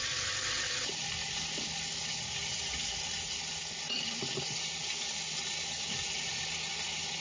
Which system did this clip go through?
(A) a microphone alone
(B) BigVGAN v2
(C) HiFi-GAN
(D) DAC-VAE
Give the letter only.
A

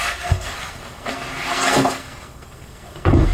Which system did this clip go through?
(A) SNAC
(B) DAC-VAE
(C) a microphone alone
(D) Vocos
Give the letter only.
A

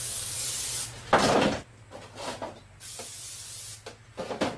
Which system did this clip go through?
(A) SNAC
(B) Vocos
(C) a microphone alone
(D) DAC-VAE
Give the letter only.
C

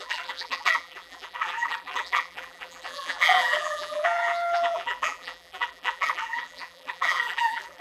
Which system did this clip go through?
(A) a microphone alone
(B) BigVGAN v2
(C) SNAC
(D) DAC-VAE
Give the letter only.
B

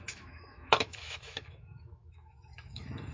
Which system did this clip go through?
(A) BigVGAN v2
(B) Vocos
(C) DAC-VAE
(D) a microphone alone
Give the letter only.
C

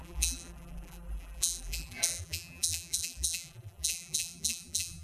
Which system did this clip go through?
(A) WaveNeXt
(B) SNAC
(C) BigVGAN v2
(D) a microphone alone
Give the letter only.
C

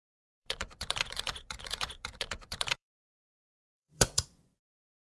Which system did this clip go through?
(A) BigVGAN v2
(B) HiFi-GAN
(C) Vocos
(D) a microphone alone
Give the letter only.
C